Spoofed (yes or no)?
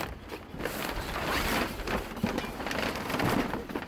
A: no